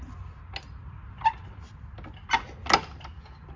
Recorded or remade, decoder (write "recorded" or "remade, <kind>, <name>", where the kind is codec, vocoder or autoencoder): recorded